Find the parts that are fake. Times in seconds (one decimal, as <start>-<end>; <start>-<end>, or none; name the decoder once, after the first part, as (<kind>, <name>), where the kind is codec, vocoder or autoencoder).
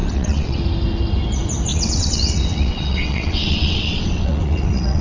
0.0-0.6 (vocoder, WaveNeXt); 1.7-5.0